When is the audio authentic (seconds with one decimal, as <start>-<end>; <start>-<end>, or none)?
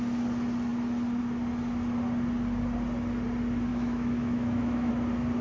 0.0-3.7; 4.9-5.4